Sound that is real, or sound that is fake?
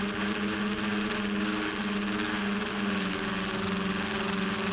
real